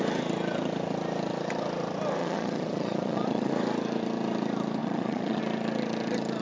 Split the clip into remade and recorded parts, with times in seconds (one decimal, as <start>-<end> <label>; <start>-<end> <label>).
0.0-2.2 recorded; 2.2-3.5 remade; 3.5-4.8 recorded; 4.8-5.4 remade; 5.4-6.4 recorded